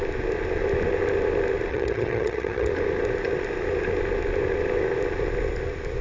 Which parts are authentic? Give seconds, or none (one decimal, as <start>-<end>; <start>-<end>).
0.0-1.7; 2.7-6.0